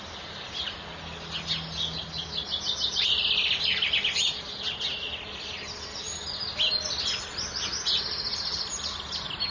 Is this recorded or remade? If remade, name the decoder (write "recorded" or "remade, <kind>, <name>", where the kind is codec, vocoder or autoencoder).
recorded